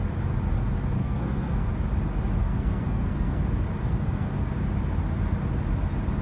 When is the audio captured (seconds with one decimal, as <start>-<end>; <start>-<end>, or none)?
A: 0.0-1.0; 1.7-2.4; 3.4-3.8; 4.3-6.2